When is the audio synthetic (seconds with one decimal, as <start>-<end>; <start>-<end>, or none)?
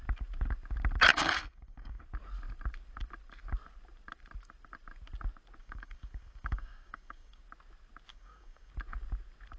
1.1-2.0; 5.6-7.4; 8.1-8.7